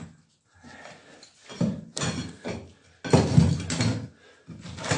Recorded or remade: recorded